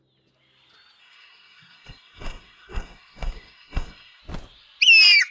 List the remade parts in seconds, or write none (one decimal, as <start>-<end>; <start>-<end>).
1.0-4.2